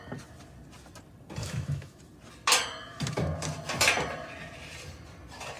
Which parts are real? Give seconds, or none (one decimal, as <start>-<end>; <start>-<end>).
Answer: 0.0-1.4; 2.0-5.6